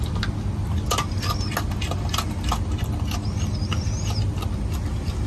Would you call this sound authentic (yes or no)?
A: yes